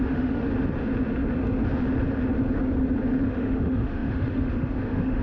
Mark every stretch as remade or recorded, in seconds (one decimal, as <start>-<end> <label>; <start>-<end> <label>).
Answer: 0.0-0.5 remade; 0.5-3.3 recorded; 3.3-5.2 remade